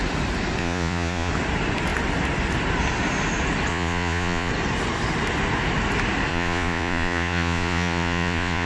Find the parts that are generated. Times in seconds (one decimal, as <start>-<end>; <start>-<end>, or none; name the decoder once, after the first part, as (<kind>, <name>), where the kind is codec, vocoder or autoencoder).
0.6-1.3 (vocoder, Vocos); 3.7-4.5; 6.3-8.7